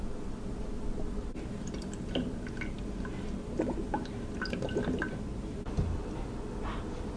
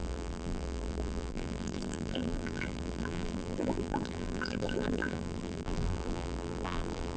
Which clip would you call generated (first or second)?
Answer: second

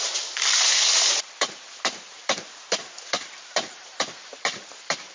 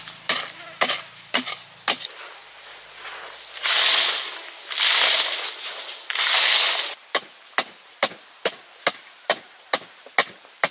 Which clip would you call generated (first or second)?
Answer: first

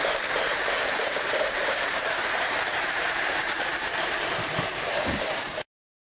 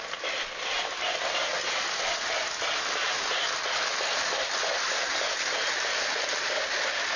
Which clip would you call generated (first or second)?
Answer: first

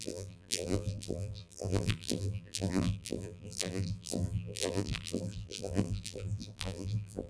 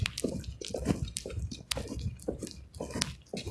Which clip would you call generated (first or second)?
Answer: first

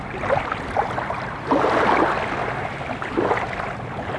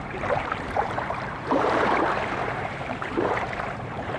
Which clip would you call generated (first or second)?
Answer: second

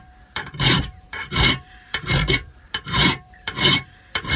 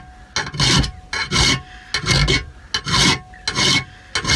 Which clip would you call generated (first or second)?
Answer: first